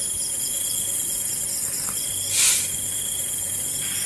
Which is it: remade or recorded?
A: recorded